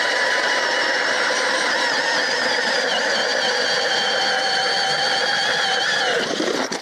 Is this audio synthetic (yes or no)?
yes